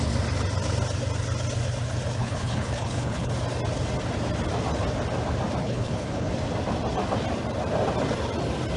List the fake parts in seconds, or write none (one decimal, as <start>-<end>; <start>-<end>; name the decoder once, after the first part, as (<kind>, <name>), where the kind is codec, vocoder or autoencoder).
2.2-3.3 (codec, HILCodec); 5.6-6.3